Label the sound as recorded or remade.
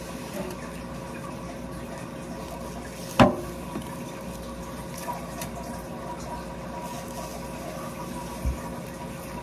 recorded